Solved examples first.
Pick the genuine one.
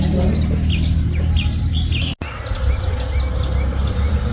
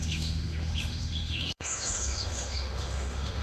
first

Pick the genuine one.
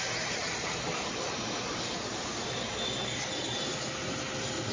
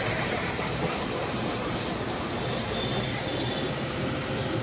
first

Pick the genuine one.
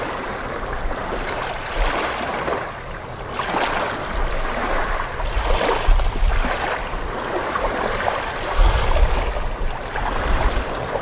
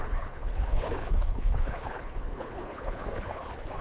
first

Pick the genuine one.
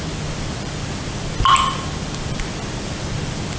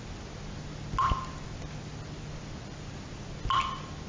second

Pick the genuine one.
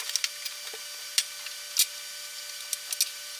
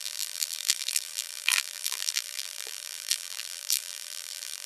first